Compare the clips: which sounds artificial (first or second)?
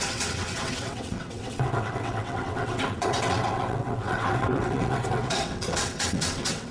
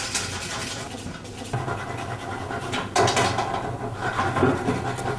first